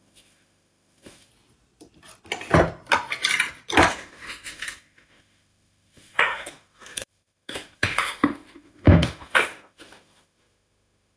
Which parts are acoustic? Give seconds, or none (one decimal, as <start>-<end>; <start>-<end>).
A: 1.3-3.9